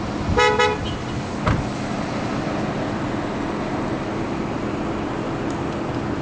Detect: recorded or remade recorded